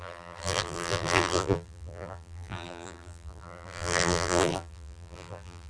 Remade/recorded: remade